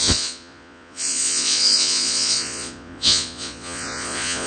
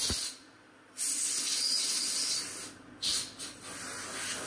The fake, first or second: first